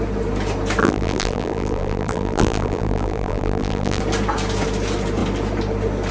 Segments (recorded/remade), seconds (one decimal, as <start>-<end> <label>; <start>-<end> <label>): 0.0-0.8 recorded; 0.8-4.0 remade; 4.0-6.1 recorded